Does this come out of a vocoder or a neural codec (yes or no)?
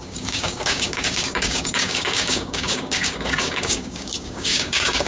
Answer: yes